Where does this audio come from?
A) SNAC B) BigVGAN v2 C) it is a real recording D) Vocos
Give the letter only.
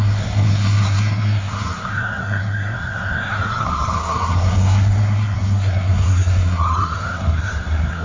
A